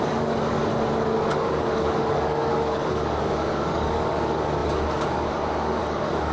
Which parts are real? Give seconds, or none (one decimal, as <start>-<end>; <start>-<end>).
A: 0.7-1.3